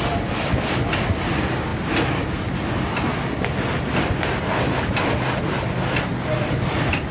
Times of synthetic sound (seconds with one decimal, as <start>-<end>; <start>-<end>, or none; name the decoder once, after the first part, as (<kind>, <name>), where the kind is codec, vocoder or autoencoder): none